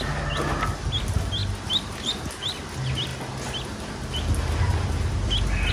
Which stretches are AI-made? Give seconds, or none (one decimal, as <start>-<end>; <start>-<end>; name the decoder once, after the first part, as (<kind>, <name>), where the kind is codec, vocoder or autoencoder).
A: none